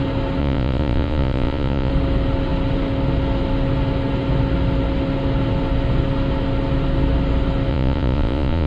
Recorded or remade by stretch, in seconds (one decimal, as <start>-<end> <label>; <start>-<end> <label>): 0.0-0.4 recorded; 0.4-1.9 remade; 1.9-7.7 recorded; 7.7-8.7 remade